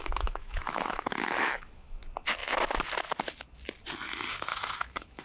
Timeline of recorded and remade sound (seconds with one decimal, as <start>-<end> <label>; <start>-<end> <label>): 0.0-2.0 remade; 2.0-4.5 recorded; 4.5-5.2 remade